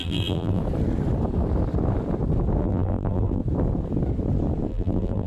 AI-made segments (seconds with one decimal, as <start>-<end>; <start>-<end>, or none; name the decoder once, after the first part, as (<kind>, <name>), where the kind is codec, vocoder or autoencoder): 0.0-0.6 (vocoder, BigVGAN v2); 2.6-3.4; 4.7-5.3